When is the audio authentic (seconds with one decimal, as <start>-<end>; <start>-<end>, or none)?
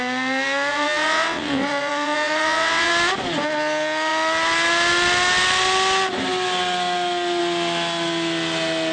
0.0-0.7; 2.9-8.9